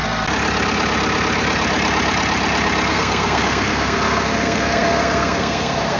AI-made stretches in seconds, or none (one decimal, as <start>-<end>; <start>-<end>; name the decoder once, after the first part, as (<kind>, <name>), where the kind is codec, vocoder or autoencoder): 2.9-6.0 (codec, SNAC)